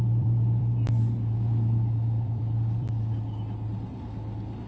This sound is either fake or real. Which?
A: fake